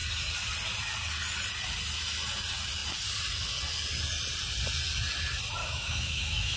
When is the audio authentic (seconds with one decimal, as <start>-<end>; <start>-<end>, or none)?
0.0-5.6

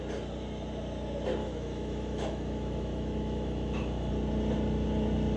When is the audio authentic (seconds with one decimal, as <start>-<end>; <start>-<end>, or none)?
0.0-1.4; 4.1-5.4

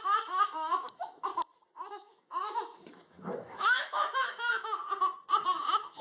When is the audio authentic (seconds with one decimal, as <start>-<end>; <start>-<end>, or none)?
1.3-1.9; 4.8-5.5

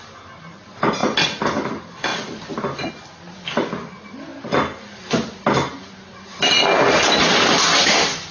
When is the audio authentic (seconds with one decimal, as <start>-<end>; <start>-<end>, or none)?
0.0-8.3

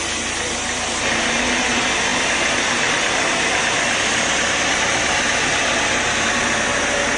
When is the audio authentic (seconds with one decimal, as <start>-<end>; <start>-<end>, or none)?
0.0-7.2